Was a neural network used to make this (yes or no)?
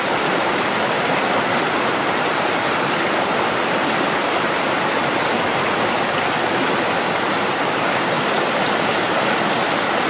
no